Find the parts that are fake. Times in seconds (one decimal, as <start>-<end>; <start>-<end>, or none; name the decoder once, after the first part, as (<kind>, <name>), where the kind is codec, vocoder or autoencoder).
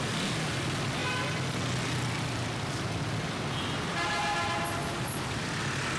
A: none